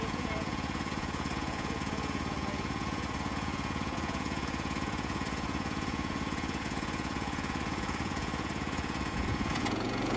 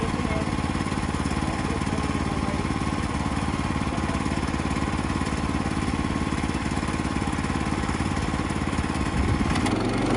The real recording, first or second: second